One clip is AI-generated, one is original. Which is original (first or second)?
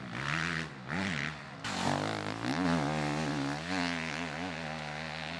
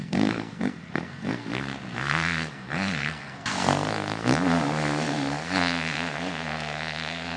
first